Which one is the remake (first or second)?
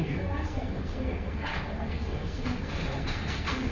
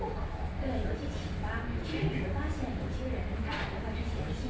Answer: first